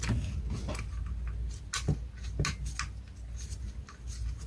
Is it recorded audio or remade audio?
recorded